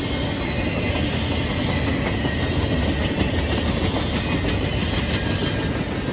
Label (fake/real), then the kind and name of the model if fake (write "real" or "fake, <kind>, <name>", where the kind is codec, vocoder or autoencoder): real